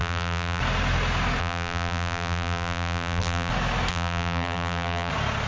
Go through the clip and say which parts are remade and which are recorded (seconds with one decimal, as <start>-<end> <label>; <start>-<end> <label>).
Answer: 0.0-0.6 remade; 0.6-1.4 recorded; 1.4-3.5 remade; 3.5-3.9 recorded; 3.9-5.1 remade; 5.1-5.5 recorded

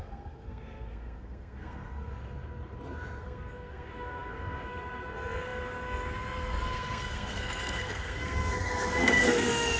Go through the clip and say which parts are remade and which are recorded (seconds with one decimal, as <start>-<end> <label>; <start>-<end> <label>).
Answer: 0.0-2.2 remade; 2.2-3.2 recorded; 3.2-9.8 remade

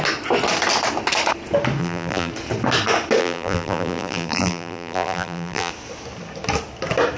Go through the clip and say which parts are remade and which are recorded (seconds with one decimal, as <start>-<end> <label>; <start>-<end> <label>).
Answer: 0.0-1.8 recorded; 1.8-2.3 remade; 2.3-3.2 recorded; 3.2-5.7 remade; 5.7-7.2 recorded

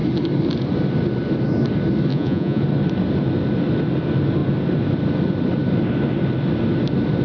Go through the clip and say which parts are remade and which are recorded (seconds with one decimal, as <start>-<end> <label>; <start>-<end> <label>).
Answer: 0.0-2.1 recorded; 2.1-2.6 remade; 2.6-7.2 recorded